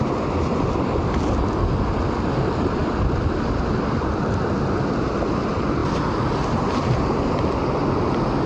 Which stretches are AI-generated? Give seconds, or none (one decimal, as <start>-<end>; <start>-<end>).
none